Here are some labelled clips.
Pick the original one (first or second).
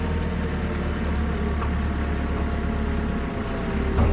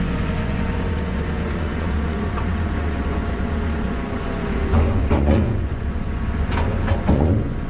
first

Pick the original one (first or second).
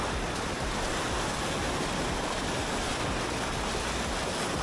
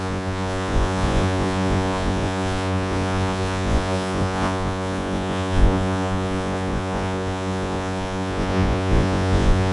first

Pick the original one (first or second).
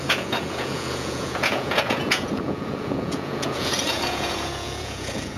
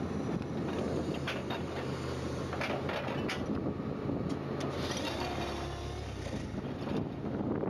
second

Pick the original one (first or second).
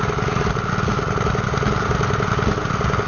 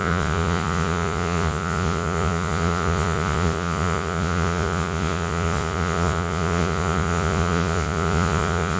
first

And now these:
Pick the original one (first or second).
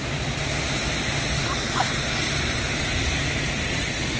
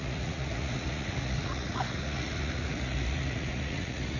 first